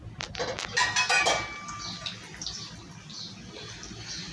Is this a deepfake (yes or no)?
no